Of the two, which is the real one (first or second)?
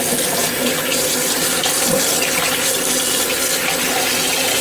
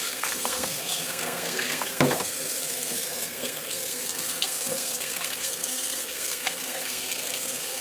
first